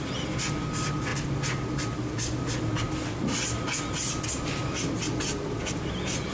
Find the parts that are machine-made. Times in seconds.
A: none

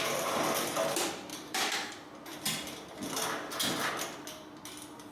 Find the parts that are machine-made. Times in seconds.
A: 1.3-1.9 (vocoder, BigVGAN v2)

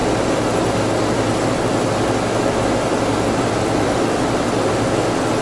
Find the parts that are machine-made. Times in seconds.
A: none

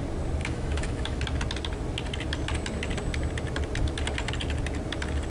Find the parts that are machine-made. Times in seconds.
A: 0.4-1.2 (autoencoder, DAC-VAE)

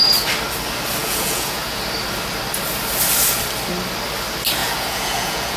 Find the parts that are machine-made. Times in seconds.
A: 1.0-1.8 (vocoder, Vocos); 4.6-5.6

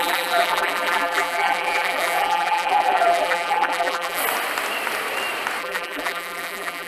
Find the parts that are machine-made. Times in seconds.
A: 0.0-4.2 (vocoder, BigVGAN v2); 5.6-6.9

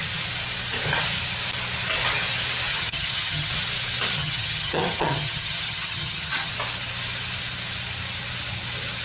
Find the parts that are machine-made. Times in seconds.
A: 2.7-3.5 (vocoder, HiFi-GAN); 4.2-6.5

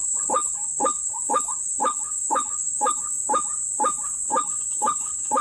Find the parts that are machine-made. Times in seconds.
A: 0.0-3.2 (codec, HILCodec); 4.3-5.4